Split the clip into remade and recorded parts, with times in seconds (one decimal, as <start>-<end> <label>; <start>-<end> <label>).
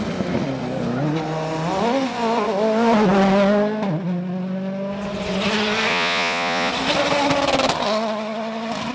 0.0-5.9 recorded; 5.9-6.7 remade; 6.7-8.9 recorded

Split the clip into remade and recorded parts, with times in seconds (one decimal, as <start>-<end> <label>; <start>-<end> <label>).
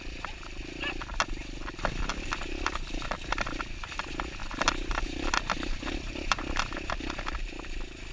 0.0-8.1 recorded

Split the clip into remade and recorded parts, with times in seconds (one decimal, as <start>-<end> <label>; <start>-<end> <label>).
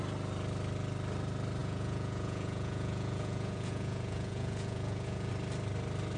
0.0-1.6 recorded; 1.6-5.3 remade; 5.3-6.2 recorded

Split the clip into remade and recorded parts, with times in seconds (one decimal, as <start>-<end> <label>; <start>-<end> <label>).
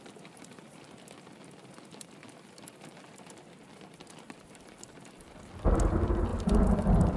0.0-7.2 recorded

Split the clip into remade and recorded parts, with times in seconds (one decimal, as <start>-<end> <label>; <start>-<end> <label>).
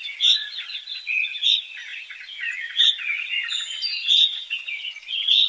0.0-5.5 remade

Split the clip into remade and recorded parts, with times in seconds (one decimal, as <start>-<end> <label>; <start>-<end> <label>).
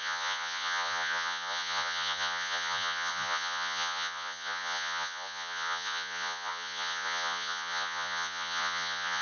0.0-9.2 remade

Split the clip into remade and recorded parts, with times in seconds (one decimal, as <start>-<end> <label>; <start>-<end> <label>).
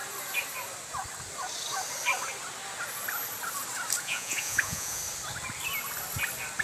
0.0-4.0 recorded; 4.0-5.0 remade; 5.0-6.6 recorded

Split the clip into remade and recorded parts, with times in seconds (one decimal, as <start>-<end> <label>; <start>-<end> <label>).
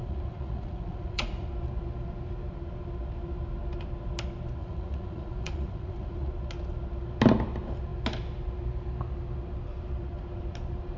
0.0-1.5 remade; 1.5-4.6 recorded; 4.6-6.3 remade; 6.3-11.0 recorded